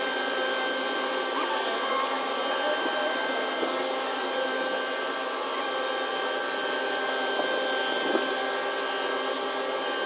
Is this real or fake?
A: real